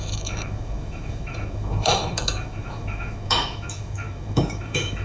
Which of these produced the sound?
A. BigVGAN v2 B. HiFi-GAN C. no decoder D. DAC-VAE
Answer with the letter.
D